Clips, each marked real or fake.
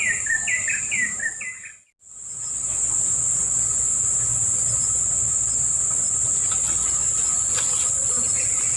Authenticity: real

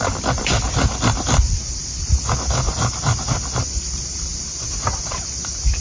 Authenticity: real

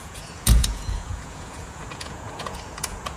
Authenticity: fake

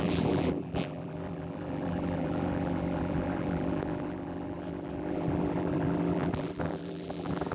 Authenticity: fake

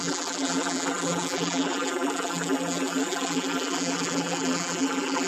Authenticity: fake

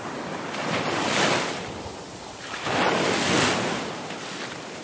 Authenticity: fake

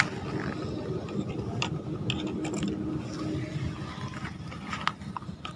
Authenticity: real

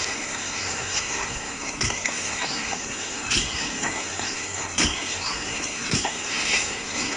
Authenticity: fake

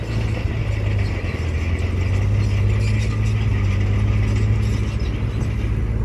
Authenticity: real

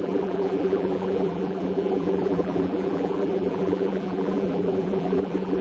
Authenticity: fake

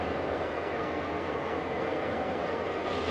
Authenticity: fake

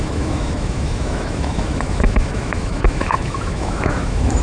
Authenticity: fake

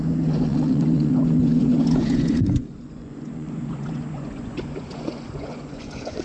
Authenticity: fake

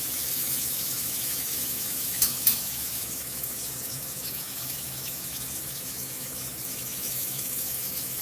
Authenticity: fake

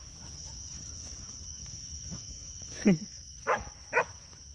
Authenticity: fake